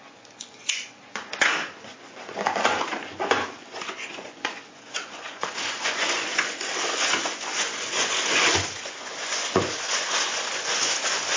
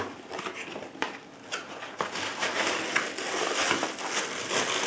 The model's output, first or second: first